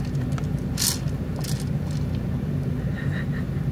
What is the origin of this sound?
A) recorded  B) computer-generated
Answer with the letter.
A